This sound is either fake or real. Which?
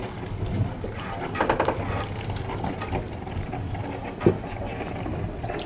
real